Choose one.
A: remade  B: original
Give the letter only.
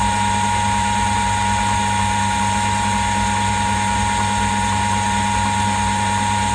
B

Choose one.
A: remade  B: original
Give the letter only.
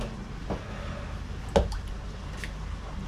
B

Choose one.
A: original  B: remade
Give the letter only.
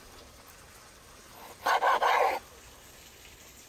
A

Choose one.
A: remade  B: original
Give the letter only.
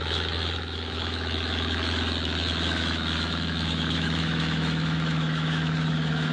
A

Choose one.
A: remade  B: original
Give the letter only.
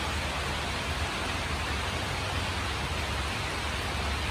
B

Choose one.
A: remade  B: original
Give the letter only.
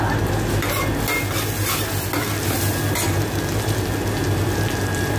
B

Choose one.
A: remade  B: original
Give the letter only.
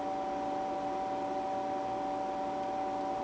B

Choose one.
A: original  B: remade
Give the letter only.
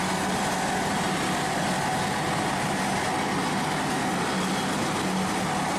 A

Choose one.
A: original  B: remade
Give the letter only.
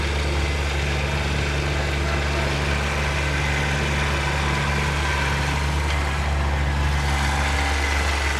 A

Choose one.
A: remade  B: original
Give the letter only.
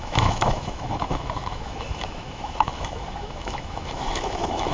A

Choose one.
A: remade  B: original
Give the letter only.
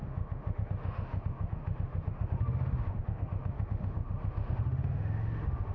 A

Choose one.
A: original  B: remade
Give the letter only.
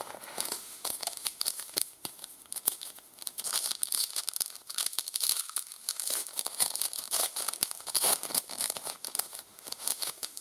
B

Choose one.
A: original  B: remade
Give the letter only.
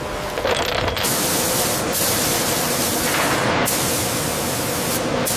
A